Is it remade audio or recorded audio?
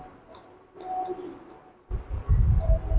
recorded